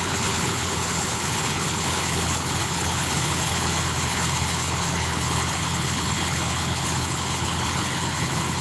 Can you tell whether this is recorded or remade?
remade